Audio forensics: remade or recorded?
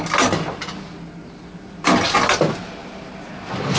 recorded